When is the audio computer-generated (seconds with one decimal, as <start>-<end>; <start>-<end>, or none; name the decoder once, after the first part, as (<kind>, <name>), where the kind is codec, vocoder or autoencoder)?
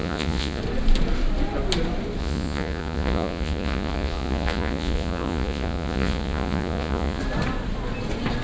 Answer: 0.0-0.6 (vocoder, Vocos); 2.2-7.2